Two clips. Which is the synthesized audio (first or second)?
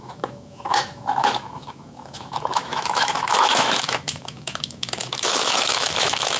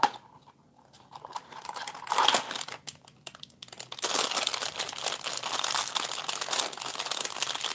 first